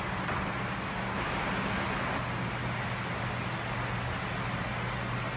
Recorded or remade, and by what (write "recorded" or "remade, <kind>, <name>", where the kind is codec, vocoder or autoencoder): recorded